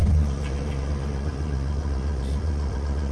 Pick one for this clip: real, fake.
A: fake